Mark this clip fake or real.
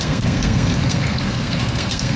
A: fake